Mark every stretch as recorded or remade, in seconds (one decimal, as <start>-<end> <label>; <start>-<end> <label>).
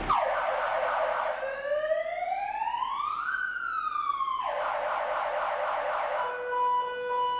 0.0-7.4 recorded